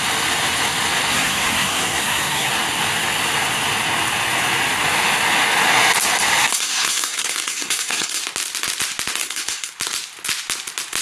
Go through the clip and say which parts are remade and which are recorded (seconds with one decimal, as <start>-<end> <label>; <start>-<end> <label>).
0.0-1.1 recorded; 1.1-2.5 remade; 2.5-6.4 recorded; 6.4-8.2 remade; 8.2-9.2 recorded; 9.2-9.7 remade; 9.7-11.0 recorded